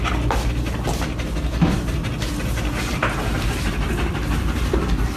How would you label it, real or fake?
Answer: real